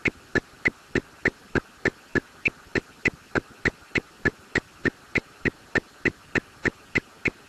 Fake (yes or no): no